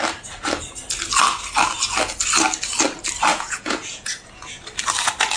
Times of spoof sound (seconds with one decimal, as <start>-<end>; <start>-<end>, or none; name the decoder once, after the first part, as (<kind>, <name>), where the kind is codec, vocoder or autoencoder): 3.3-4.6 (vocoder, Vocos)